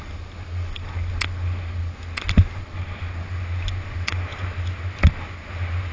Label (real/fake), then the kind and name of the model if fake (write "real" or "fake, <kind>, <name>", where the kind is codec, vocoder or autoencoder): real